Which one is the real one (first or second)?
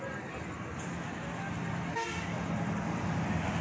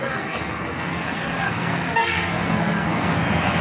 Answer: first